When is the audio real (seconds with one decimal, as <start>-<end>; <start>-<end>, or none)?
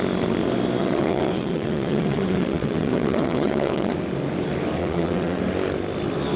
0.0-0.8; 3.9-4.8; 5.4-6.4